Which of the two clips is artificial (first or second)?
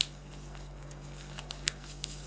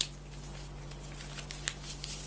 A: first